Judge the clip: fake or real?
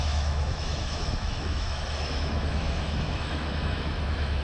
fake